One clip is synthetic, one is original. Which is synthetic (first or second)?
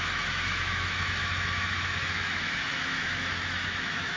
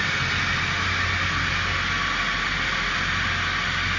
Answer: first